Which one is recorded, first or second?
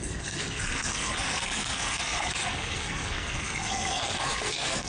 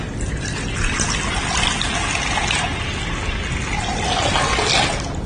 second